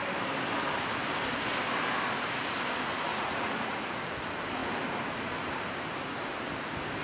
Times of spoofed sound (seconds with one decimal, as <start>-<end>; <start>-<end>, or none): 3.1-4.0